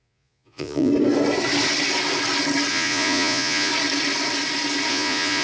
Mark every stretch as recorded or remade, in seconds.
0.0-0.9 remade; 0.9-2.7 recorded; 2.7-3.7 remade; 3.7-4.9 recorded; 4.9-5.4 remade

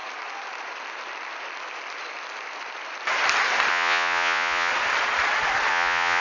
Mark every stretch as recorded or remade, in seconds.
0.0-3.7 recorded; 3.7-4.7 remade; 4.7-5.7 recorded; 5.7-6.2 remade

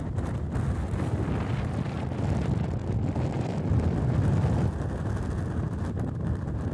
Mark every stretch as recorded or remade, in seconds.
0.0-6.7 recorded

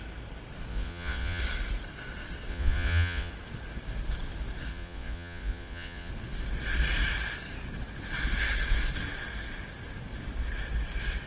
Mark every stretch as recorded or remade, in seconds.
0.0-0.7 recorded; 0.7-1.4 remade; 1.4-2.5 recorded; 2.5-3.3 remade; 3.3-4.7 recorded; 4.7-6.1 remade; 6.1-11.3 recorded